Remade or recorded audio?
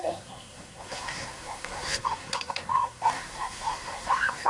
remade